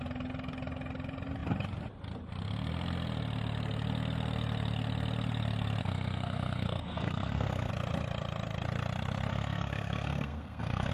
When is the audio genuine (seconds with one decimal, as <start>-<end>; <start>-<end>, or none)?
0.0-5.8; 7.7-9.3